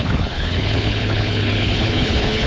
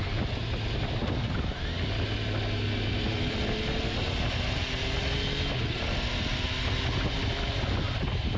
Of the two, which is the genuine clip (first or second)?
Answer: second